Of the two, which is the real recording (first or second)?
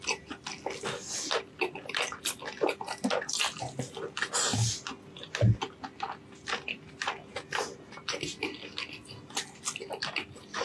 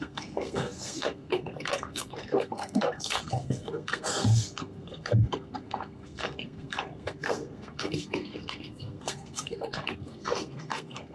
first